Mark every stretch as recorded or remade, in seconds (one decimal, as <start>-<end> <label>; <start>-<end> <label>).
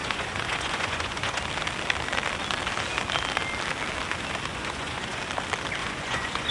0.0-1.4 remade; 1.4-4.5 recorded; 4.5-5.2 remade; 5.2-5.8 recorded; 5.8-6.5 remade